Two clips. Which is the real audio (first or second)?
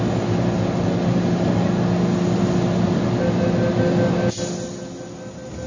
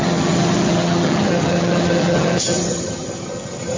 first